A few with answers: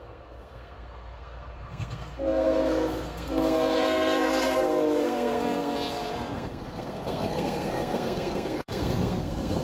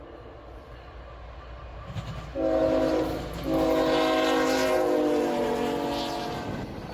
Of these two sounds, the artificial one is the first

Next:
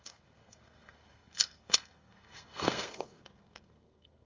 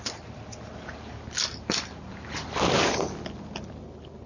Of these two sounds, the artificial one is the first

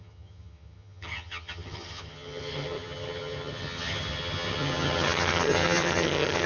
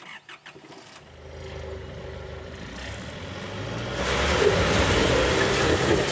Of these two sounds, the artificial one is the first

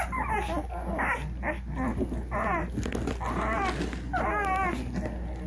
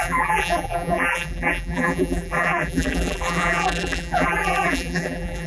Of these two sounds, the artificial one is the second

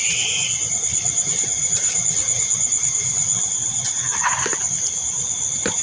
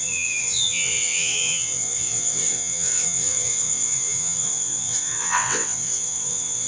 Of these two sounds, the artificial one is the second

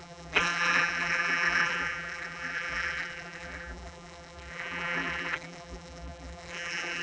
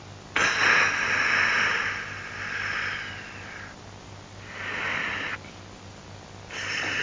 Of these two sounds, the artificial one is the first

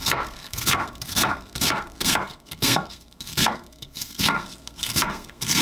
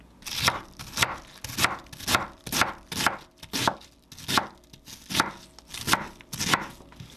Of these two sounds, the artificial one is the first